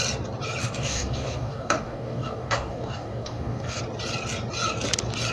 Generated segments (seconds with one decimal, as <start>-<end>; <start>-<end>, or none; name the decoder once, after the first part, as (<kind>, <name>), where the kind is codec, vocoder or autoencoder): 0.6-3.8 (codec, DAC)